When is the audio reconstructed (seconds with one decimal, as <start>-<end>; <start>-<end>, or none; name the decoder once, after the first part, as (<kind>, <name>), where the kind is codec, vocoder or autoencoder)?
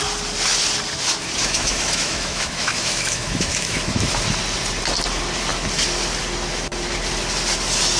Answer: 1.4-4.1 (autoencoder, DAC-VAE)